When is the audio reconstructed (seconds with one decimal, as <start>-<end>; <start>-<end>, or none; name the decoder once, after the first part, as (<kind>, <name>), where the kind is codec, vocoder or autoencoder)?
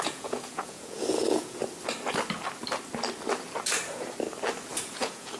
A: 0.0-1.6 (vocoder, Vocos); 4.8-5.4